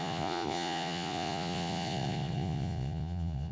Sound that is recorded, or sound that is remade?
remade